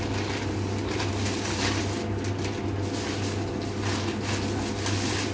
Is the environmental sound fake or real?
real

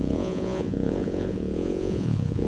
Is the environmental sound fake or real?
fake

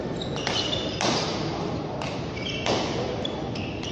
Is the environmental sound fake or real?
real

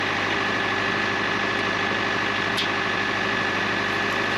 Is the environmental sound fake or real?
real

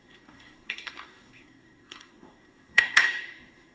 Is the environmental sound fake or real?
fake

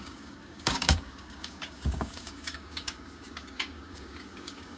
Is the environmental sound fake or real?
fake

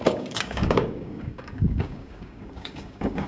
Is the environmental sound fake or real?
fake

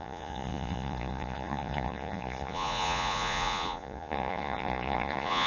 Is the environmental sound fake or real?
fake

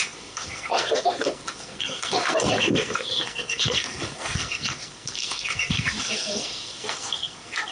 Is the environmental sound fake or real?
fake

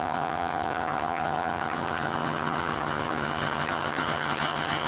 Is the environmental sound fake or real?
fake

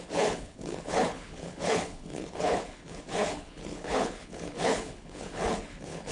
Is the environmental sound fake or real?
fake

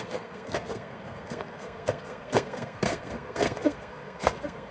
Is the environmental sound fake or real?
fake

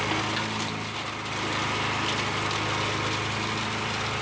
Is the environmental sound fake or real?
real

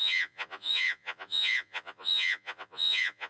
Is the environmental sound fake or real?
fake